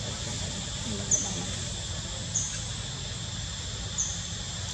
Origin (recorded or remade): recorded